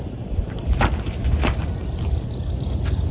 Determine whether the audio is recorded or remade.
remade